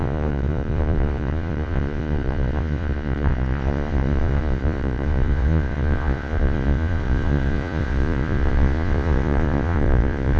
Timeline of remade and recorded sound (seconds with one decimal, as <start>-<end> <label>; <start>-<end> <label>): 0.0-10.4 remade